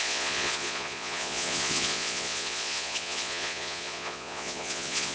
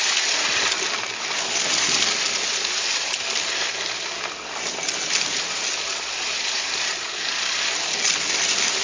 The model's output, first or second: first